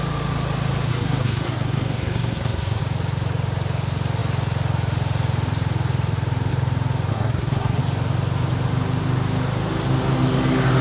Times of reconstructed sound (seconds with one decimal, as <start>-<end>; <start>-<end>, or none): 0.9-2.8; 7.1-7.8